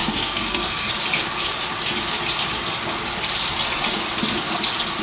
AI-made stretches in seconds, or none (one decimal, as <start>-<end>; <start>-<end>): 0.0-0.9